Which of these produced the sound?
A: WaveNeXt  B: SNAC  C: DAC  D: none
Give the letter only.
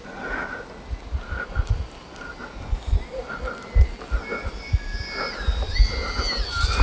D